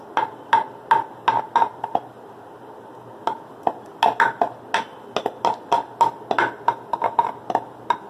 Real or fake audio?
real